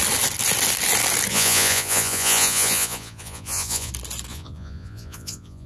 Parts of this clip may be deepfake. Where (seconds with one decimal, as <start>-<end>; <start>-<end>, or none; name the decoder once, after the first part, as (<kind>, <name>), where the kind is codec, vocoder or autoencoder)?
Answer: 1.3-3.9 (vocoder, Vocos); 4.3-5.7